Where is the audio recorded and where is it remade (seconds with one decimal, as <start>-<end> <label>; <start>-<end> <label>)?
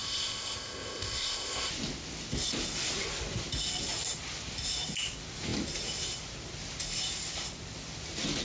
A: 0.0-1.7 remade; 1.7-8.4 recorded